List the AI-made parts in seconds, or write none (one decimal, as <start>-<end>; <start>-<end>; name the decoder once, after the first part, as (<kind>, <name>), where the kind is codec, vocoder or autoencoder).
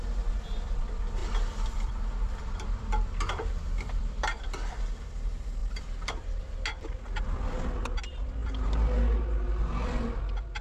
1.2-4.7 (vocoder, BigVGAN v2); 5.6-6.4